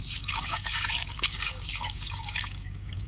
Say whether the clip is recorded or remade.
remade